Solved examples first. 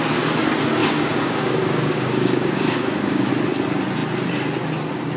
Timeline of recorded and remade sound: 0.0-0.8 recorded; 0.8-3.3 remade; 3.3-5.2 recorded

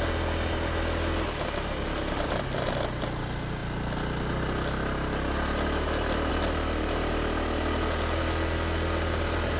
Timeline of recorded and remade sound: 0.0-9.6 recorded